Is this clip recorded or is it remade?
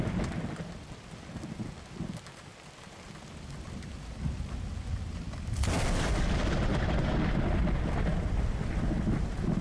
recorded